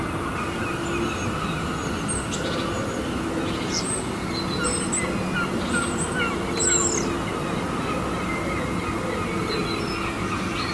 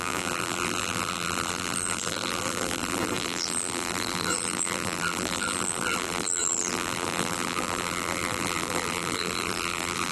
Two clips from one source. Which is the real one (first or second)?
first